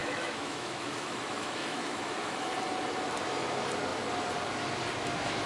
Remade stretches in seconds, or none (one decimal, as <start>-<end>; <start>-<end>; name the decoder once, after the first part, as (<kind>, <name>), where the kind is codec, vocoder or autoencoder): 0.0-2.5 (autoencoder, DAC-VAE)